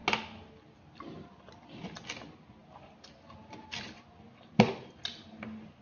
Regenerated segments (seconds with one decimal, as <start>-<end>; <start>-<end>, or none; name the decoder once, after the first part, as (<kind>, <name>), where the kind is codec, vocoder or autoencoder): none